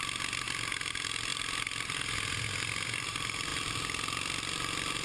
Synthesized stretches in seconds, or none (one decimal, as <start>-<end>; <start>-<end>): none